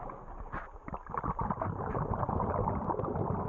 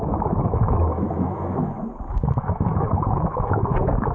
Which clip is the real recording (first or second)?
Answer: first